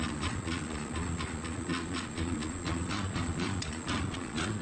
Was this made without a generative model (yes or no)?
no